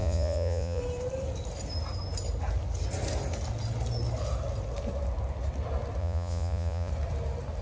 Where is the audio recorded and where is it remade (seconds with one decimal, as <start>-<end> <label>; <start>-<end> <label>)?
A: 0.0-0.8 remade; 0.8-6.0 recorded; 6.0-6.9 remade; 6.9-7.6 recorded

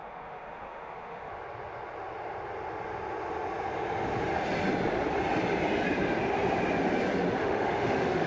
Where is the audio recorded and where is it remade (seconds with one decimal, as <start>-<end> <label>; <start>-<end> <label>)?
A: 0.0-1.3 remade; 1.3-7.4 recorded; 7.4-8.3 remade

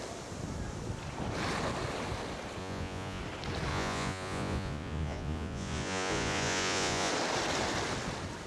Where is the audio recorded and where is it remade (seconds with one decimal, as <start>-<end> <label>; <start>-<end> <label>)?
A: 0.0-2.6 recorded; 2.6-3.2 remade; 3.2-3.7 recorded; 3.7-7.1 remade; 7.1-8.5 recorded

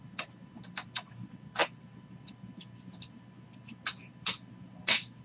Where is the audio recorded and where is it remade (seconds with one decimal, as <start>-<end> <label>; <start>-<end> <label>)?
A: 0.0-5.2 recorded

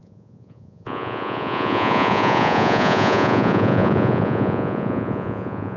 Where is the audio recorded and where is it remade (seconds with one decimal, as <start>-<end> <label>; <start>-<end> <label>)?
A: 0.0-5.8 remade

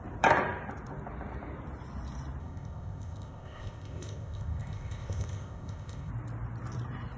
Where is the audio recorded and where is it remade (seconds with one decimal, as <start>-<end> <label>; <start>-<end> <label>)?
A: 0.0-2.4 recorded; 2.4-6.1 remade; 6.1-7.2 recorded

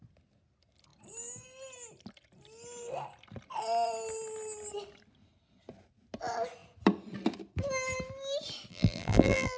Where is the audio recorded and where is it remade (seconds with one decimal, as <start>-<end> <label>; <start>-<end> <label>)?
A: 0.0-8.7 recorded; 8.7-9.6 remade